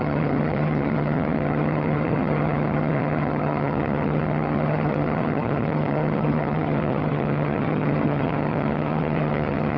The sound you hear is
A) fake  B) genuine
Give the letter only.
A